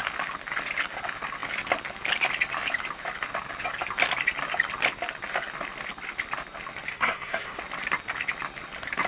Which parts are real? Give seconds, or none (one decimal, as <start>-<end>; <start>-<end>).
0.0-6.9; 7.6-9.1